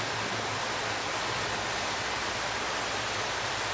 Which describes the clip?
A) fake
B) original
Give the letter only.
B